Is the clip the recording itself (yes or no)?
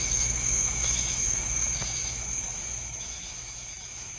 no